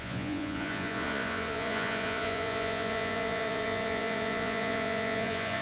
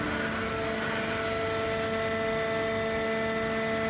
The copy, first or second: first